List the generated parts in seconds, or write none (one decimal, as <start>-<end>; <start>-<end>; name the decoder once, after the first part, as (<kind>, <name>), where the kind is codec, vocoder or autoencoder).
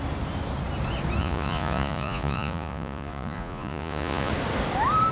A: 1.2-4.3 (vocoder, Vocos)